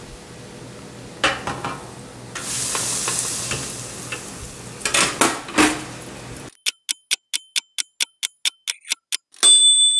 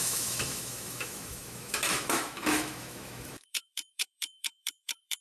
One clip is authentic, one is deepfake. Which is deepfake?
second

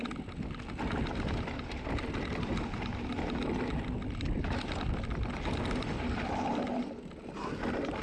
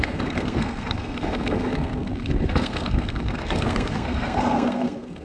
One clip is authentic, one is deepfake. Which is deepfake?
second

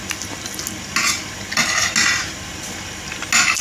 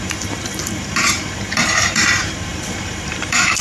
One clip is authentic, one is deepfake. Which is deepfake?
second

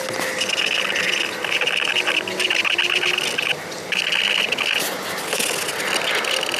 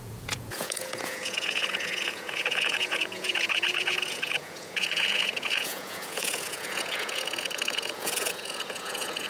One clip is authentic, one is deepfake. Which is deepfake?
second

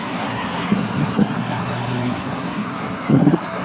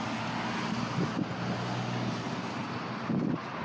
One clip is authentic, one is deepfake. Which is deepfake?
first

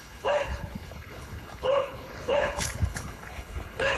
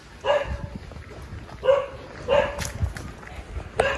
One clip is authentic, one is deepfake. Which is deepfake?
first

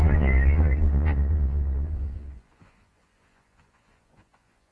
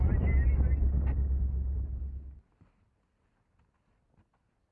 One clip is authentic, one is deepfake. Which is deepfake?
first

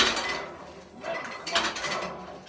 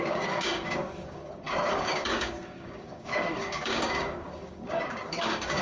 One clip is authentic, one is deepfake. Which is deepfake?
second